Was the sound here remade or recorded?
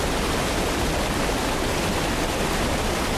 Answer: recorded